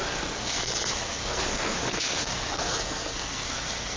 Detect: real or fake fake